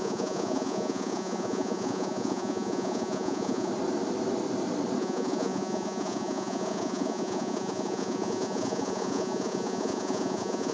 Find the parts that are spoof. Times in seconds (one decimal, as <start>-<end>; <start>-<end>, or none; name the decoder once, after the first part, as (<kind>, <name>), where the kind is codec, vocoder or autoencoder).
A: 0.0-3.7 (vocoder, Vocos); 5.0-10.7